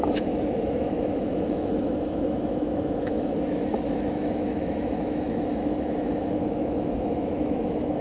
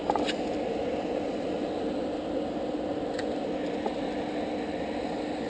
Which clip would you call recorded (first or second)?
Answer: second